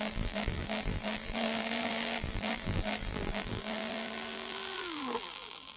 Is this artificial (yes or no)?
yes